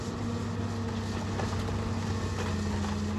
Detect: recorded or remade recorded